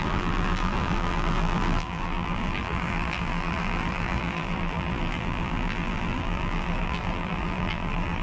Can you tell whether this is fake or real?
fake